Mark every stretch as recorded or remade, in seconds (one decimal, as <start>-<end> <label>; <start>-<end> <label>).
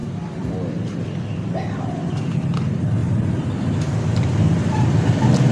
0.0-2.1 remade; 2.1-3.0 recorded; 3.0-5.5 remade